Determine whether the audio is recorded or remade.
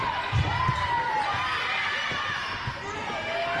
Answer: recorded